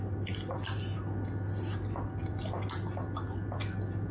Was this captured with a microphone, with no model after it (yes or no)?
yes